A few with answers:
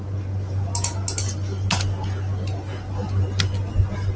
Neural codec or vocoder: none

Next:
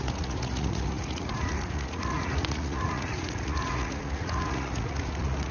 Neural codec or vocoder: vocoder, Vocos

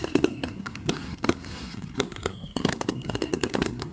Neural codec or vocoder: codec, SNAC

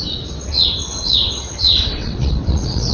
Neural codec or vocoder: vocoder, WaveNeXt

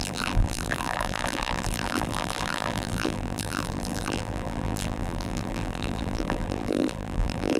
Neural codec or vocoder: vocoder, BigVGAN v2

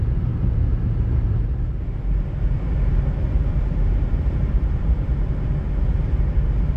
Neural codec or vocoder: vocoder, BigVGAN v2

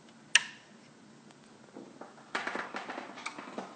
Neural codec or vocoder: none